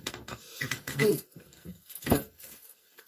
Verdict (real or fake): fake